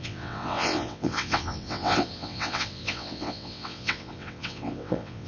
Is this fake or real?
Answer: fake